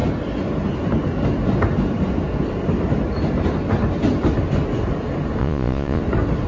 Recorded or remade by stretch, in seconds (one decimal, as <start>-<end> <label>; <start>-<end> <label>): 0.0-5.4 recorded; 5.4-6.0 remade; 6.0-6.5 recorded